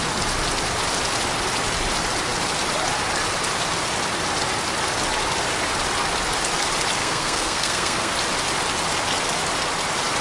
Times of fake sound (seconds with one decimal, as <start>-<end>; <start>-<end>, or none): 7.0-8.1